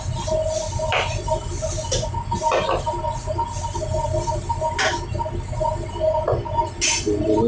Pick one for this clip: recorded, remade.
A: recorded